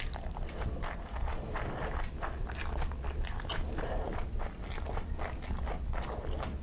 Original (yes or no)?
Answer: yes